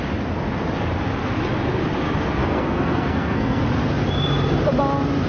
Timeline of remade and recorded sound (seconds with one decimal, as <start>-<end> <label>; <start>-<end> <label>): 0.0-2.4 recorded; 2.4-3.6 remade; 3.6-5.3 recorded